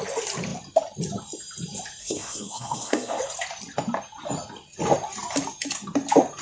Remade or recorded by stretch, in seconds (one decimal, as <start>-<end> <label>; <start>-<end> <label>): 0.0-2.0 recorded; 2.0-3.2 remade; 3.2-6.4 recorded